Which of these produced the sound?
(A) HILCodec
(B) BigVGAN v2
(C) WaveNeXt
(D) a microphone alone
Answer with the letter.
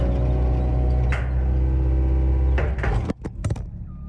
D